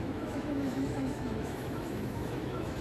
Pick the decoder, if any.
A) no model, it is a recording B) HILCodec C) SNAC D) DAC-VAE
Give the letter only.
D